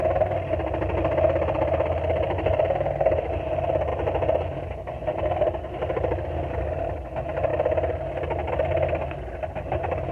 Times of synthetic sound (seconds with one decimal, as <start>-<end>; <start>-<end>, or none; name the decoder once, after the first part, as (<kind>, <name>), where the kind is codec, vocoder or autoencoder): none